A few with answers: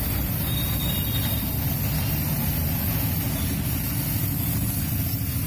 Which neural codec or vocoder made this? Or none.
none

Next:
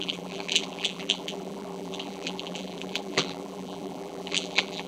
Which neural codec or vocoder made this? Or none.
vocoder, BigVGAN v2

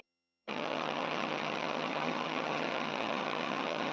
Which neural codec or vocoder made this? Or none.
vocoder, HiFi-GAN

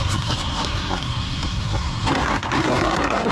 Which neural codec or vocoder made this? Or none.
codec, SNAC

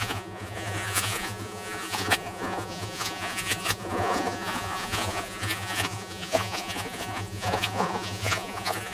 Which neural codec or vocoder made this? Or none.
vocoder, Vocos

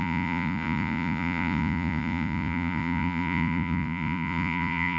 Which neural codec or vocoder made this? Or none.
vocoder, Vocos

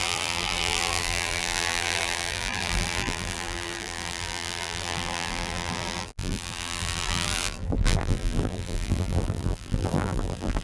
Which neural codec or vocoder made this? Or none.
vocoder, BigVGAN v2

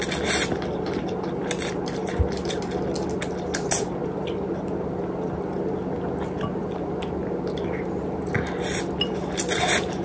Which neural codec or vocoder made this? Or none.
none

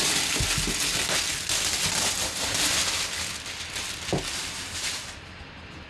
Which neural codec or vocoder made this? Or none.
none